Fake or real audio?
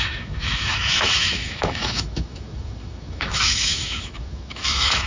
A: fake